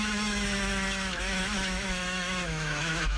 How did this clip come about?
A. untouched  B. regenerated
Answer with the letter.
B